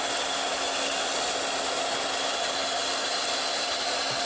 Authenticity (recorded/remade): recorded